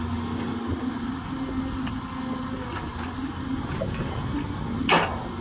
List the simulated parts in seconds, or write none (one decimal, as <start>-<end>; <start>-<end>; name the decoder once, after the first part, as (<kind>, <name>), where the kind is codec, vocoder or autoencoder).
none